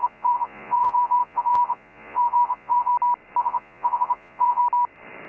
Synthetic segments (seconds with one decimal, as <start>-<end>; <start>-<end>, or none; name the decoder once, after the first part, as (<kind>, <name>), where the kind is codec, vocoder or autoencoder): 0.0-2.9 (vocoder, Vocos); 3.4-4.6